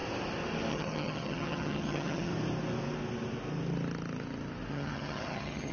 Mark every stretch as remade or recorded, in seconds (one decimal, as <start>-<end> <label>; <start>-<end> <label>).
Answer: 0.0-0.7 recorded; 0.7-2.3 remade; 2.3-4.7 recorded; 4.7-5.7 remade